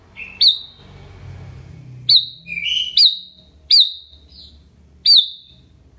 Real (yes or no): yes